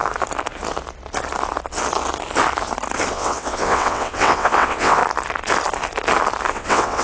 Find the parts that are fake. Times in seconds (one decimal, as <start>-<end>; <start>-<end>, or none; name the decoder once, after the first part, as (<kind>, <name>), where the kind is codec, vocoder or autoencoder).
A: 3.1-5.0 (vocoder, WaveNeXt); 6.5-7.0